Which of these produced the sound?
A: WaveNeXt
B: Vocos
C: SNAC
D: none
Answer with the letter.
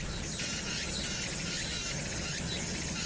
D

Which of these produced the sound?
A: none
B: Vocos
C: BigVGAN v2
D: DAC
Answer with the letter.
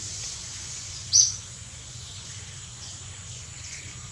B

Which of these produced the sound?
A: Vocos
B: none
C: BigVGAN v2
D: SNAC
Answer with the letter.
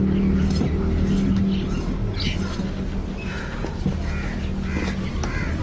B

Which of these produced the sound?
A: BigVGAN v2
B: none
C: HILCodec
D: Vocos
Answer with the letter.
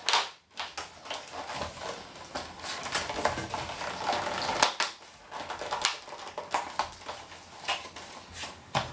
B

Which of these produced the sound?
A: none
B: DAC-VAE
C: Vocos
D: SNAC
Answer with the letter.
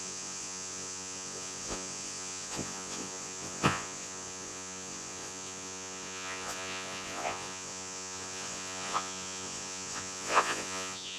C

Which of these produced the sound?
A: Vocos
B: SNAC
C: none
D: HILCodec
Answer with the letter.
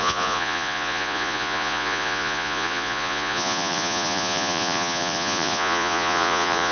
A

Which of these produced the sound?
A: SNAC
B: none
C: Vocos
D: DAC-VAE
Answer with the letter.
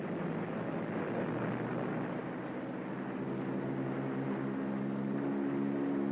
B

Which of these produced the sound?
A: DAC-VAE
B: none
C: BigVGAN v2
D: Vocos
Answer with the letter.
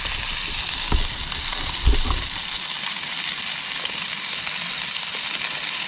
B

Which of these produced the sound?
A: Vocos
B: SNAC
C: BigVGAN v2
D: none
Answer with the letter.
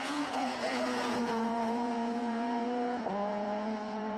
A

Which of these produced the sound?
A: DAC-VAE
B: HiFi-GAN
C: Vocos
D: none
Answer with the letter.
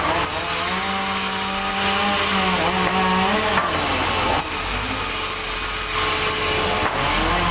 D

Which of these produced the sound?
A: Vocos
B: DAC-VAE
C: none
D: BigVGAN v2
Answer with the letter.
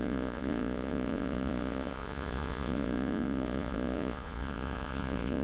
A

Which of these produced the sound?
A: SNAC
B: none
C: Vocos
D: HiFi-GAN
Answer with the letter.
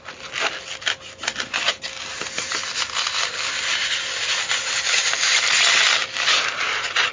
B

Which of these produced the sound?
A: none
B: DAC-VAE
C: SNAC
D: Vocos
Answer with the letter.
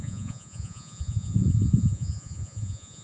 D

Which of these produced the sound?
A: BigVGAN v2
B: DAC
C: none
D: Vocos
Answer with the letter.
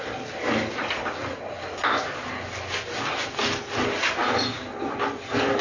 C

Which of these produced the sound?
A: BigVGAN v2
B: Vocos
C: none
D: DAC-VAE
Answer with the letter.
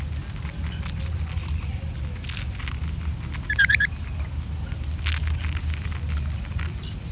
C